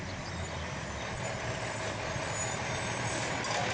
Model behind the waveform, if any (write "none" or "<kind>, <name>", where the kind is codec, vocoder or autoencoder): none